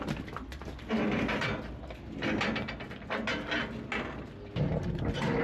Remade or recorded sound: recorded